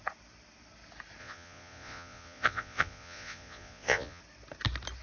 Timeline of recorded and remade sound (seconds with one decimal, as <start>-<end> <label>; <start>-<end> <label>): 0.0-1.2 recorded; 1.2-4.2 remade; 4.2-5.0 recorded